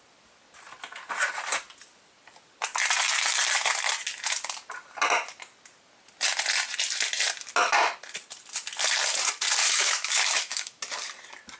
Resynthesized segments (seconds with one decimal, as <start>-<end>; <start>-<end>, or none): 9.6-10.8